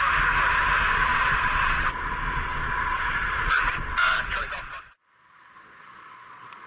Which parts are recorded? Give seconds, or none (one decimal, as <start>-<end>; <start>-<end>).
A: 0.0-1.1; 1.9-2.5